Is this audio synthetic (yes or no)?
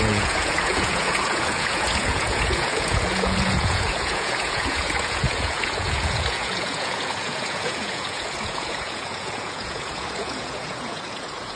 yes